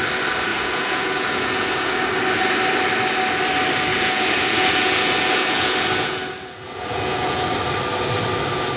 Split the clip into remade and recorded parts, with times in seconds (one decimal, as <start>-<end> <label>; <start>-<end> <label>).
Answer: 0.0-0.5 recorded; 0.5-1.9 remade; 1.9-3.9 recorded; 3.9-7.5 remade; 7.5-8.8 recorded